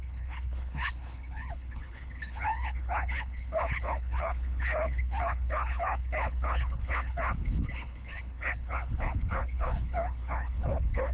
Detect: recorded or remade remade